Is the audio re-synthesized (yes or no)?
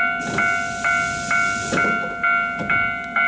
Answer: no